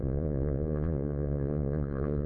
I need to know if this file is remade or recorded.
remade